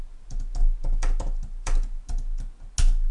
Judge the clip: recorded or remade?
recorded